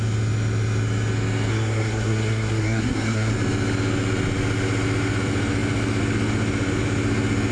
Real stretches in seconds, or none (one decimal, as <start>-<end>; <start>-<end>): 0.0-1.5; 3.3-7.5